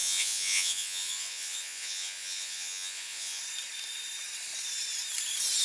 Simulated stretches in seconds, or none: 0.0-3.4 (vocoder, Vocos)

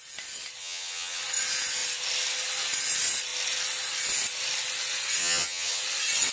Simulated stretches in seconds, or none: 0.6-1.2 (vocoder, HiFi-GAN); 5.2-5.8

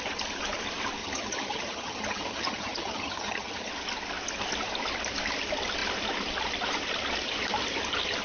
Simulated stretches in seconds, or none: 1.0-3.7 (vocoder, HiFi-GAN)

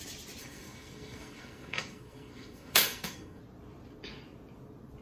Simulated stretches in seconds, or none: 0.4-3.4 (codec, SNAC)

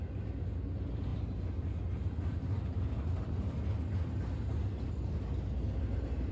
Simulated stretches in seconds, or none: none

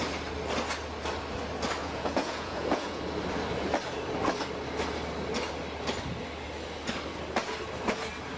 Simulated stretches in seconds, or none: 1.8-3.0 (vocoder, Vocos)